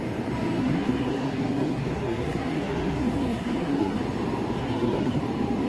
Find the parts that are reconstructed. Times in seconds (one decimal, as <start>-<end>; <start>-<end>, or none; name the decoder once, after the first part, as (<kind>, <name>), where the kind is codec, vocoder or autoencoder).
0.6-4.0 (codec, SNAC); 4.6-5.2